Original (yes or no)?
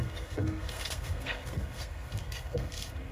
no